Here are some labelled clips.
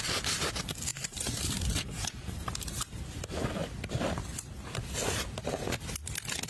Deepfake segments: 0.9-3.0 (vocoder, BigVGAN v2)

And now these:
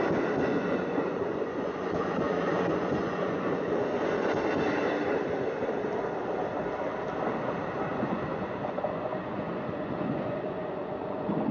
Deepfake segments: 0.5-4.4 (vocoder, Vocos); 7.9-11.5

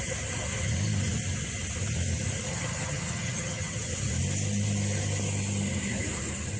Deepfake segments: 2.5-3.9 (vocoder, HiFi-GAN)

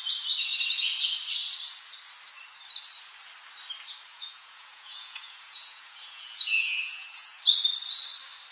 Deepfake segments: 4.1-7.4 (vocoder, Vocos)

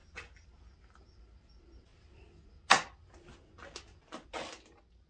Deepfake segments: none

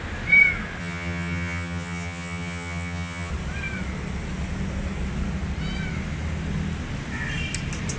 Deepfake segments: 0.8-3.3 (vocoder, HiFi-GAN)

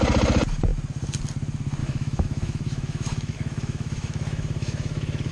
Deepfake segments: 1.8-5.3 (autoencoder, DAC-VAE)